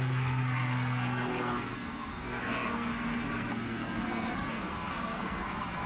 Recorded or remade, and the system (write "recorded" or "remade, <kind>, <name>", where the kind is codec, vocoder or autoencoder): remade, codec, SNAC